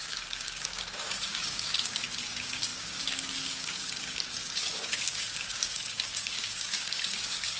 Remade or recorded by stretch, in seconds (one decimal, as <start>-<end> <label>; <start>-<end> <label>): 0.0-7.6 remade